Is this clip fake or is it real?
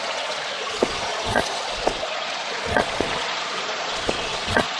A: fake